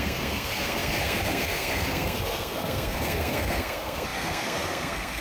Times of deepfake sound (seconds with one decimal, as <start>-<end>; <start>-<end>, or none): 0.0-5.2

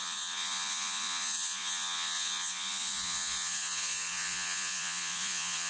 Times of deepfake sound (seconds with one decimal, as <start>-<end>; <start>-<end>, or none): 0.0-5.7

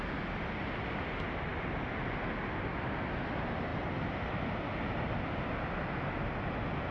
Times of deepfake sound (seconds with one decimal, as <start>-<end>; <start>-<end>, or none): none

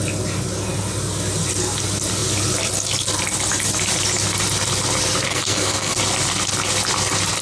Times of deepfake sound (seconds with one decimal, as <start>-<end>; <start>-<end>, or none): 5.3-6.0

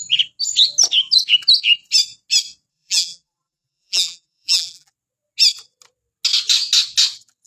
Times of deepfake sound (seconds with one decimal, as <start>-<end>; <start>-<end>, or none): 2.7-4.9

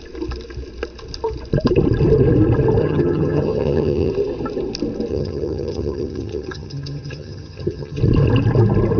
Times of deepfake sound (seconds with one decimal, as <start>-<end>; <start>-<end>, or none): 2.8-4.1; 5.1-8.0

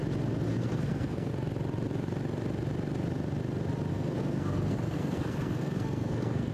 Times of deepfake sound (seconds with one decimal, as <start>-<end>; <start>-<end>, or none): 0.5-1.3; 3.9-6.5

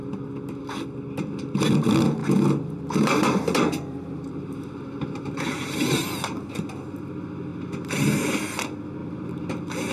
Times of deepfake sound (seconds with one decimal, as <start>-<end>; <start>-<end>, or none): 2.2-6.5; 9.0-9.5